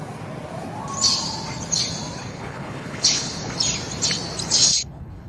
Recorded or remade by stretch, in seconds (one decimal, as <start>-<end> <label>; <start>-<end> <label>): 0.0-2.3 recorded; 2.3-3.5 remade; 3.5-4.7 recorded; 4.7-5.3 remade